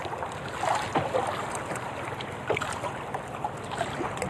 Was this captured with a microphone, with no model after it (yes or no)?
yes